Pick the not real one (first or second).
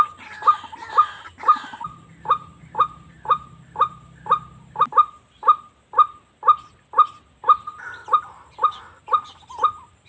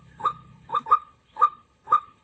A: second